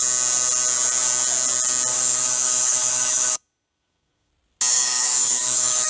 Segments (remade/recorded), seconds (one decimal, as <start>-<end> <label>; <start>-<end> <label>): 0.0-1.9 recorded; 1.9-4.3 remade; 4.3-4.7 recorded; 4.7-5.9 remade